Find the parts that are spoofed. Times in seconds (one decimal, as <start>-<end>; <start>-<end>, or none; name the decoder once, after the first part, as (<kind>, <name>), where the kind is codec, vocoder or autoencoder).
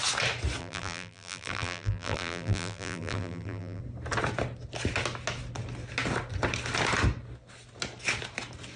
0.6-3.8 (vocoder, BigVGAN v2)